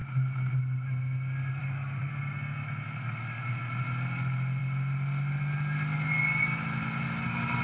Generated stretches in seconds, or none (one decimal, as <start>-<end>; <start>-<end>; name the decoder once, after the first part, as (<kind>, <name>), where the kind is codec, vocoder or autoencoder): 1.6-2.1 (codec, DAC)